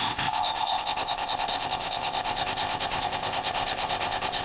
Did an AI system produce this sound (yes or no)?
yes